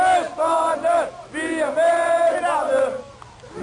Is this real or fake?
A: real